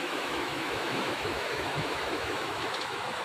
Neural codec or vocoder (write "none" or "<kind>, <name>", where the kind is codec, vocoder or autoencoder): autoencoder, DAC-VAE